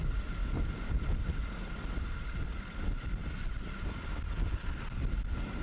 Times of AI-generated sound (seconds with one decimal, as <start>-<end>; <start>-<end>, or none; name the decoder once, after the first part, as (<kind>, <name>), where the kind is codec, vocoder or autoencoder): none